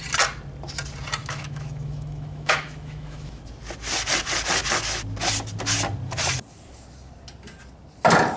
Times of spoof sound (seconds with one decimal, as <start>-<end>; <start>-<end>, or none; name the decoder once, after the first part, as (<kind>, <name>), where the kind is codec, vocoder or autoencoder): 1.2-3.4 (autoencoder, DAC-VAE)